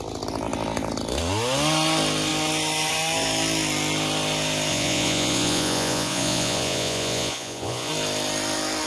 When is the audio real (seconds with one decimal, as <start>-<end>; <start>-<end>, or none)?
0.0-4.7; 7.9-8.9